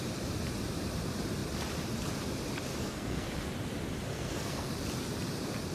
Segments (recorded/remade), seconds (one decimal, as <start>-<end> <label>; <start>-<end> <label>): 0.0-2.8 recorded; 2.8-3.4 remade; 3.4-4.1 recorded; 4.1-4.7 remade; 4.7-5.7 recorded